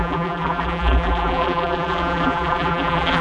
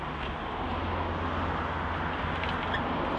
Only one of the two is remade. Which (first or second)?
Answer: first